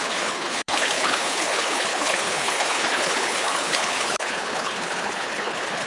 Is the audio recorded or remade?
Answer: remade